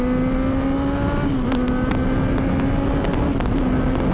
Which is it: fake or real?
real